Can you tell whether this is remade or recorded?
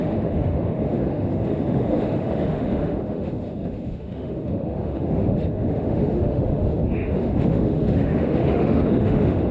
remade